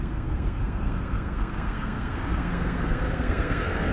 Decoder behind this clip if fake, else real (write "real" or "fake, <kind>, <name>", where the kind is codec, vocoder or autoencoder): fake, codec, SNAC